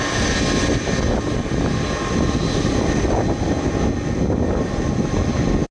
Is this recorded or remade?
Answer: recorded